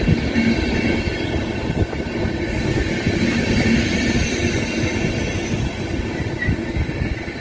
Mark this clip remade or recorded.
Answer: recorded